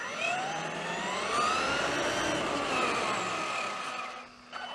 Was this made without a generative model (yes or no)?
yes